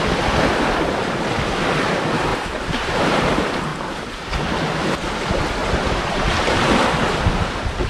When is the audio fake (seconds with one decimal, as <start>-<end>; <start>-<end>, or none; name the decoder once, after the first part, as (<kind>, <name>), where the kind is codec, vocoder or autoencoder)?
2.3-3.2 (vocoder, BigVGAN v2); 5.6-6.7